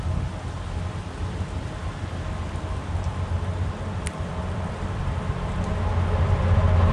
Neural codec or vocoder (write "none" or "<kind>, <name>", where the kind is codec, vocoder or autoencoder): none